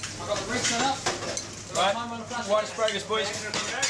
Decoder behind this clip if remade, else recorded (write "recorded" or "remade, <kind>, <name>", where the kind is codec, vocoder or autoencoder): recorded